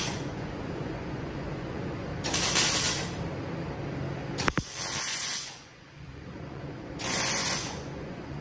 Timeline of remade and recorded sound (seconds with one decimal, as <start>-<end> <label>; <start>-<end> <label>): 0.0-2.1 remade; 2.1-5.0 recorded; 5.0-8.4 remade